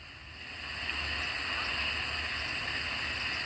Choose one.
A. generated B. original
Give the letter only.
B